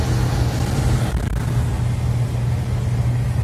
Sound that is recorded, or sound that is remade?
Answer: recorded